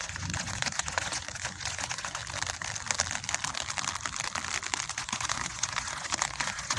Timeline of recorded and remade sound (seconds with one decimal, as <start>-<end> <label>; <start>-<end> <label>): 0.0-2.2 remade; 2.2-4.9 recorded; 4.9-6.8 remade